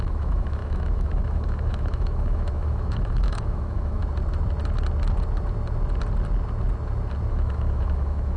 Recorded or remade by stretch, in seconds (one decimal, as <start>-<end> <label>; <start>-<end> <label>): 0.0-4.0 remade; 4.0-7.3 recorded; 7.3-8.4 remade